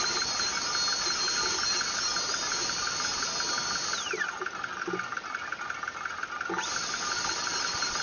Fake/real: real